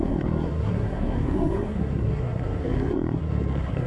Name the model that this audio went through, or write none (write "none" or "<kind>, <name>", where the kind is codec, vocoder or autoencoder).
codec, SNAC